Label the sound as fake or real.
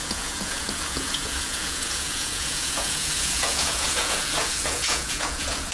fake